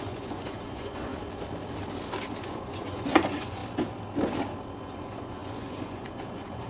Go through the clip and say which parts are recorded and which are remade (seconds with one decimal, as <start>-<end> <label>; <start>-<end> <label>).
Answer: 0.0-1.1 remade; 1.1-2.4 recorded; 2.4-3.6 remade; 3.6-4.8 recorded; 4.8-6.7 remade